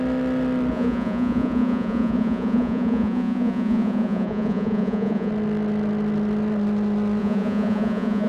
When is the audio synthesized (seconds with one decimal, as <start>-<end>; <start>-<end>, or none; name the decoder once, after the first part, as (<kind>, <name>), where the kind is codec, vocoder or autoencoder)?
0.7-5.3 (vocoder, Vocos); 7.2-8.3